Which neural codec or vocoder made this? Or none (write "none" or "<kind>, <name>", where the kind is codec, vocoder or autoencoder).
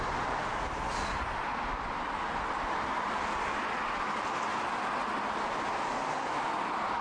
none